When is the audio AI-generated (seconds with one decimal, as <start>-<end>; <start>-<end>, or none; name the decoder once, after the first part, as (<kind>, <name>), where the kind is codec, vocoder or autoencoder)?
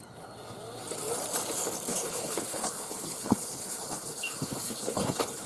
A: 1.9-5.5 (codec, HILCodec)